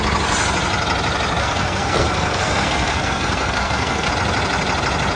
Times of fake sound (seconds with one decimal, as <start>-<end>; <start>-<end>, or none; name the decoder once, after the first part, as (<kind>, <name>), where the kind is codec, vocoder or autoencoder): 1.4-4.1 (codec, SNAC)